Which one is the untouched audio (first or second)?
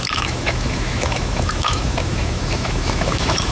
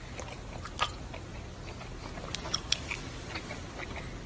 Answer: second